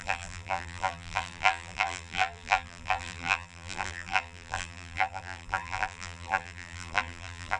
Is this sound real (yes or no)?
no